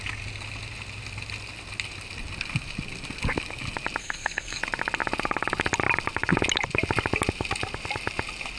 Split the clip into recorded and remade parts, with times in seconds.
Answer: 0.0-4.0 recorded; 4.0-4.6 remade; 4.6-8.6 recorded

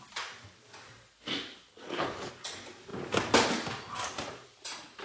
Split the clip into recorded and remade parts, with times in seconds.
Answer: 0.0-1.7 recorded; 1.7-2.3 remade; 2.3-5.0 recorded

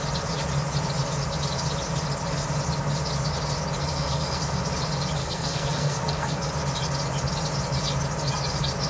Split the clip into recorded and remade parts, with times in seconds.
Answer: 0.0-3.8 recorded; 3.8-4.6 remade; 4.6-5.2 recorded; 5.2-6.5 remade; 6.5-8.9 recorded

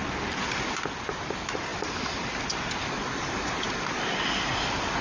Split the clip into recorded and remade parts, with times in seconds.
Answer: 0.0-5.0 recorded